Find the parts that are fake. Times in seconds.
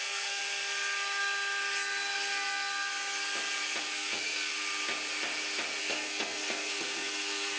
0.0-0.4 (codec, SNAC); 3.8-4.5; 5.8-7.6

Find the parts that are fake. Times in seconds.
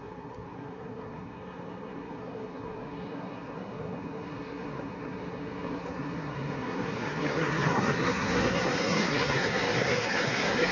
0.0-10.7 (codec, SNAC)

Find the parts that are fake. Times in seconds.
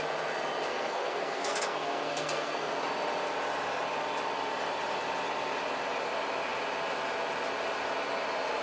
0.7-2.7 (codec, SNAC)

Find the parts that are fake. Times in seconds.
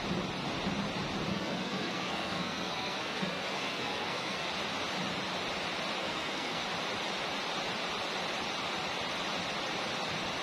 1.3-4.5 (codec, SNAC); 6.0-6.6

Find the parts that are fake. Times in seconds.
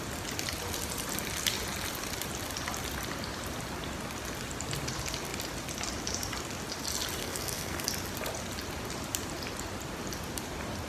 7.2-7.9 (codec, SNAC)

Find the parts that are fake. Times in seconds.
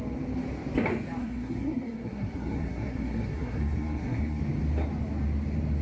1.2-4.4 (codec, SNAC)